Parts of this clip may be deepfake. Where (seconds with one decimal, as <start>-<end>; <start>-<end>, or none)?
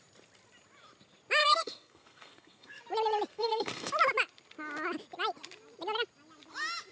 1.4-2.8; 3.3-3.9